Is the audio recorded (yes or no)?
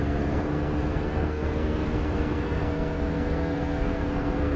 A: no